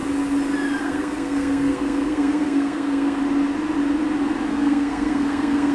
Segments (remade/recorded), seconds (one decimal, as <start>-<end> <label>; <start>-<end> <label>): 0.0-0.8 recorded; 0.8-3.2 remade; 3.2-4.5 recorded; 4.5-5.7 remade